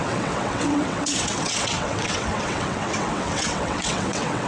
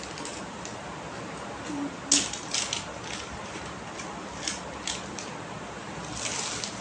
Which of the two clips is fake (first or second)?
first